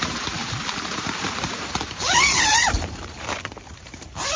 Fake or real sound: fake